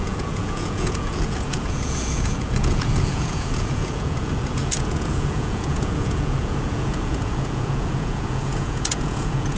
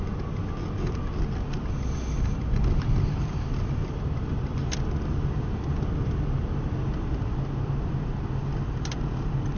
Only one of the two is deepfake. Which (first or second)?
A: first